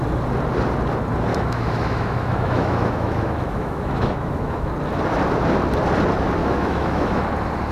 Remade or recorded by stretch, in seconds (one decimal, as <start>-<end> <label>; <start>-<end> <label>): 0.0-1.3 recorded; 1.3-4.7 remade; 4.7-6.4 recorded; 6.4-7.2 remade; 7.2-7.7 recorded